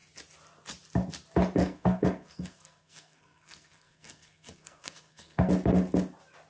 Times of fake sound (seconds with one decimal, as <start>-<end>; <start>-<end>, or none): 1.6-5.5